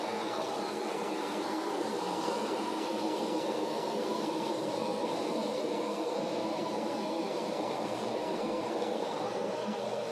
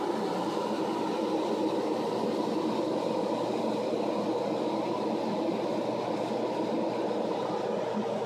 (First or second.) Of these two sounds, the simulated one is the first